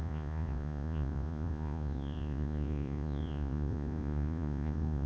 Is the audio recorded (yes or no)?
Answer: no